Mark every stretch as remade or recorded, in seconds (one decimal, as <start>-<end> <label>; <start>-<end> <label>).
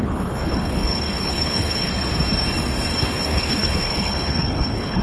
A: 0.0-1.9 remade; 1.9-3.0 recorded; 3.0-5.0 remade